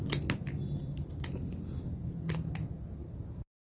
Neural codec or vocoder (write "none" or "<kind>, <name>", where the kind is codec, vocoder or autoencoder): none